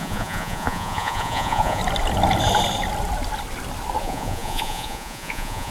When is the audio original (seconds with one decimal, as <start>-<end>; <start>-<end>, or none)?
1.8-4.0